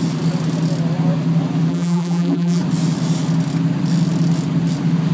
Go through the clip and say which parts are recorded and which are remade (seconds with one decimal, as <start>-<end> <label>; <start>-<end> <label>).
0.0-1.7 recorded; 1.7-2.6 remade; 2.6-5.1 recorded